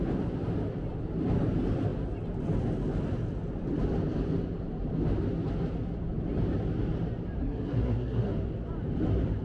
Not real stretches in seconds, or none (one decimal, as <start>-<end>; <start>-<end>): 7.4-8.3